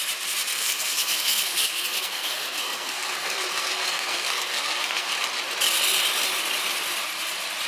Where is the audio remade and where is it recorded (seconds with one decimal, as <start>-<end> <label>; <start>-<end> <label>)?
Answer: 0.0-0.5 recorded; 0.5-5.1 remade; 5.1-7.7 recorded